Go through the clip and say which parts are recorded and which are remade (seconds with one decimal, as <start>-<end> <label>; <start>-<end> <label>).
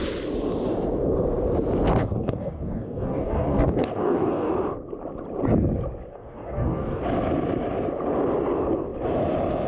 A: 0.0-2.0 recorded; 2.0-4.5 remade; 4.5-6.1 recorded; 6.1-7.0 remade; 7.0-9.7 recorded